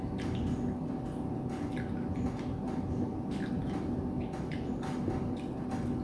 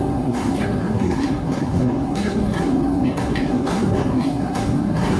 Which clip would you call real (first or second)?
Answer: first